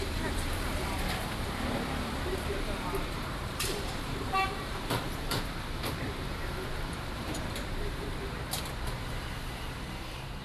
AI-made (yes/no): yes